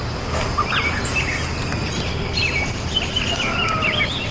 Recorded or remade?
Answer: recorded